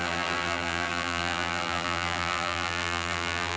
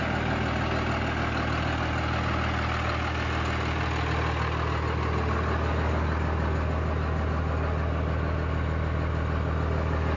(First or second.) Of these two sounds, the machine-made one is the first